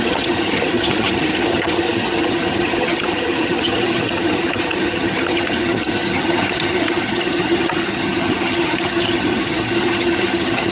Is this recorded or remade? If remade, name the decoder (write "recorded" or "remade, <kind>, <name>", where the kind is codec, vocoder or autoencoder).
remade, vocoder, HiFi-GAN